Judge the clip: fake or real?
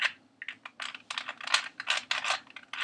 real